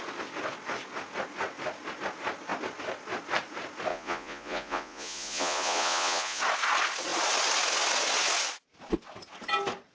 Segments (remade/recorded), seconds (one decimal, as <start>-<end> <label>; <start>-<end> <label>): 0.0-3.9 recorded; 3.9-6.4 remade; 6.4-9.9 recorded